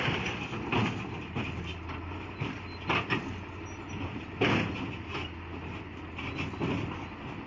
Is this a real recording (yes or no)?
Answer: yes